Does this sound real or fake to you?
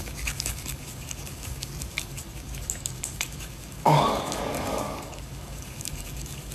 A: fake